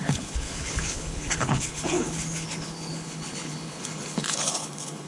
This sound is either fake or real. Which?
fake